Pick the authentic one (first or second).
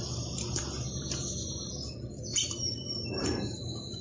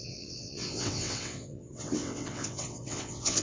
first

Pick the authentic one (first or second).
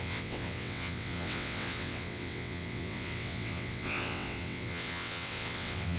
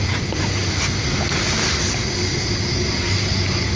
second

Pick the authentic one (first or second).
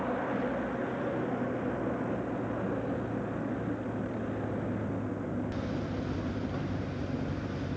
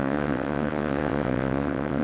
first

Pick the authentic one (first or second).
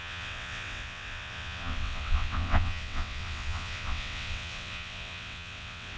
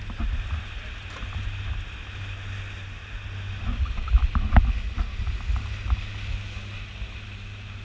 second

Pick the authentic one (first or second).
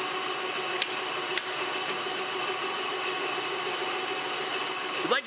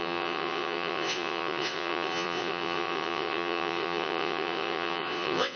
first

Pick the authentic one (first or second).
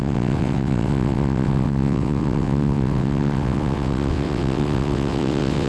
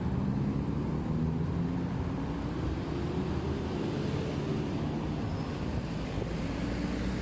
second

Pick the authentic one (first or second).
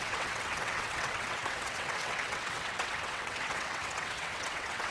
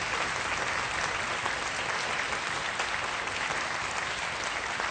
second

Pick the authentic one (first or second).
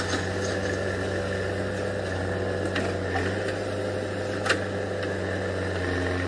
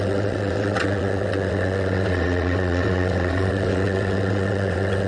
first